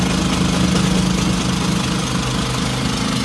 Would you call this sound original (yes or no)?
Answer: yes